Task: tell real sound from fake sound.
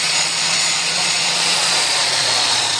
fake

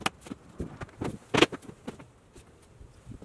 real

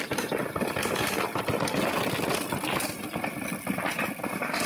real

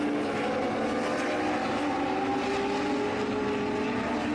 real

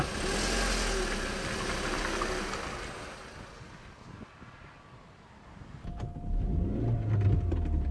real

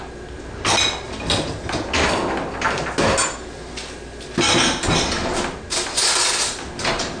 real